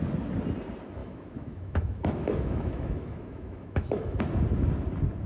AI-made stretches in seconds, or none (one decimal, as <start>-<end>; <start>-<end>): 1.0-4.2